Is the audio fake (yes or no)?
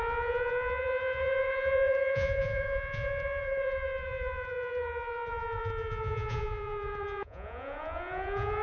yes